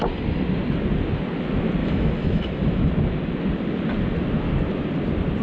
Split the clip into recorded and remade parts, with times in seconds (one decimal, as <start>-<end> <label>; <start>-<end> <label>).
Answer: 0.0-1.8 recorded; 1.8-2.9 remade; 2.9-5.4 recorded